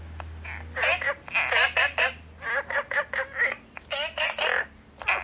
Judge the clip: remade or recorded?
recorded